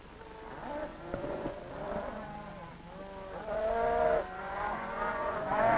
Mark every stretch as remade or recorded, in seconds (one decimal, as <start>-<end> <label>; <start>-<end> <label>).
0.0-0.9 recorded; 0.9-1.6 remade; 1.6-4.4 recorded; 4.4-5.8 remade